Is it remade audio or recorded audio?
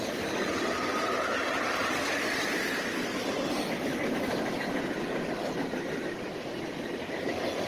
recorded